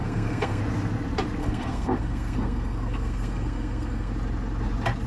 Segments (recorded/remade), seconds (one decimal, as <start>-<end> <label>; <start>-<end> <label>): 0.0-0.6 remade; 0.6-1.4 recorded; 1.4-4.1 remade; 4.1-5.1 recorded